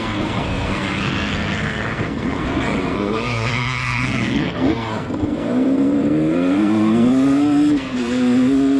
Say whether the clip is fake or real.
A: fake